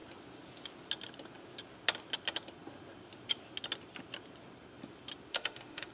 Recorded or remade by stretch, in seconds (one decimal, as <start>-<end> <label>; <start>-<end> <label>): 0.0-5.3 recorded; 5.3-5.9 remade